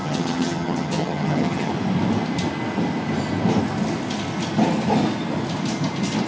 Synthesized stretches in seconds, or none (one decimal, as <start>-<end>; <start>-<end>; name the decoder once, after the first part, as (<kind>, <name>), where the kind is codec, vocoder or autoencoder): 0.0-1.7 (vocoder, HiFi-GAN)